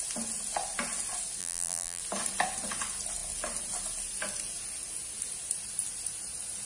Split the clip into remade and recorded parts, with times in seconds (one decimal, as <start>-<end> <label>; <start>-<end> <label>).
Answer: 0.0-1.4 recorded; 1.4-2.0 remade; 2.0-6.7 recorded